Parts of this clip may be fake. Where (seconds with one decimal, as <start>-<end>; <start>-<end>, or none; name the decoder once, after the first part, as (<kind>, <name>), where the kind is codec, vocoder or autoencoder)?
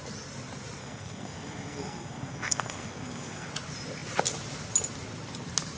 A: 0.8-3.5 (codec, SNAC)